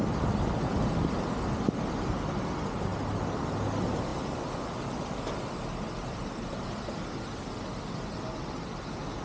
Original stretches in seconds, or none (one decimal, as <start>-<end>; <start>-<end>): 0.0-9.2